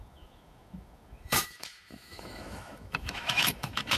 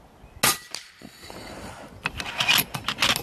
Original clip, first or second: second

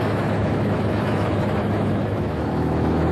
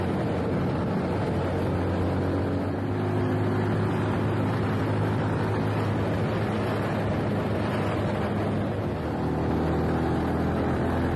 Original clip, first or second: second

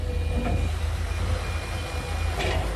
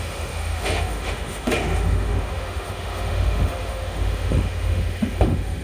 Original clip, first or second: first